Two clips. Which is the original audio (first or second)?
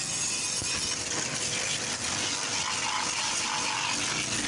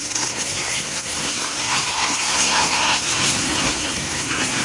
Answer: first